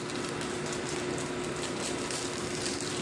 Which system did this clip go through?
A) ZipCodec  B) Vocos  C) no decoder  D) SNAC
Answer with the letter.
C